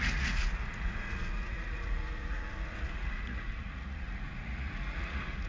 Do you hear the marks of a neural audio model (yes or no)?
yes